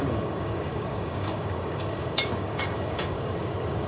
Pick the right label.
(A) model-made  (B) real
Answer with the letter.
A